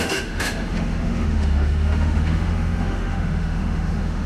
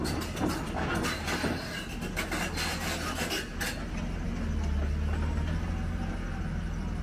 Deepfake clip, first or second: first